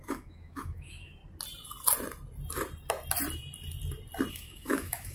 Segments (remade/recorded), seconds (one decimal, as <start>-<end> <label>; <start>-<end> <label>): 0.0-1.2 remade; 1.2-4.3 recorded; 4.3-5.1 remade